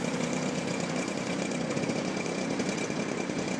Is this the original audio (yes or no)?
no